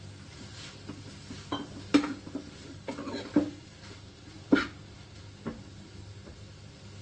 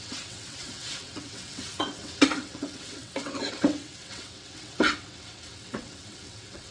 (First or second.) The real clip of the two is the first